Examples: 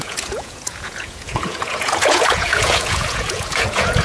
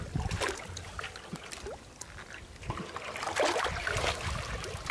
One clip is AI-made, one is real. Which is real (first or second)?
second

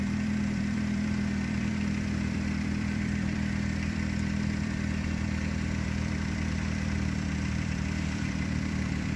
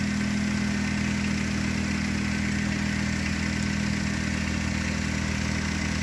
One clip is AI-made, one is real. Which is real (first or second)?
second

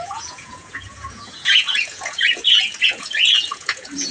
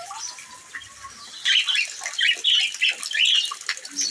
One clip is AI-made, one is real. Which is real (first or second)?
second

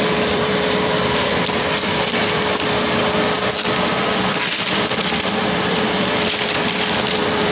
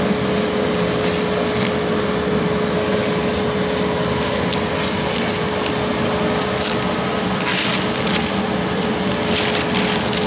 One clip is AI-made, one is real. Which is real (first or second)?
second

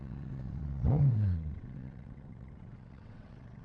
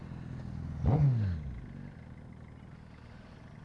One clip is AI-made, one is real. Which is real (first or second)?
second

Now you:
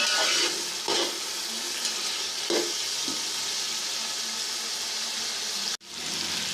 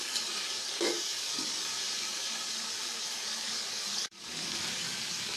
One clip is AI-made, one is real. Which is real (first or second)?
first